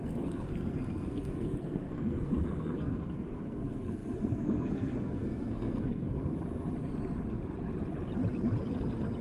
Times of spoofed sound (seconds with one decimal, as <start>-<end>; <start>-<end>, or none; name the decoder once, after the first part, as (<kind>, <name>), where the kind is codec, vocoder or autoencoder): 0.0-6.3 (codec, SNAC)